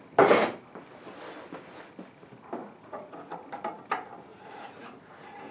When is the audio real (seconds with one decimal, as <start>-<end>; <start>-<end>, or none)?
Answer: 0.0-2.6; 3.3-4.3; 5.1-5.5

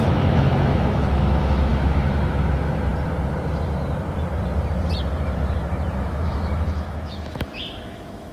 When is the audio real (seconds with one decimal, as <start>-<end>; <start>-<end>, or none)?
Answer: 2.9-5.9